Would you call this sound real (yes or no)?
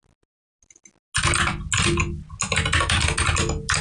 yes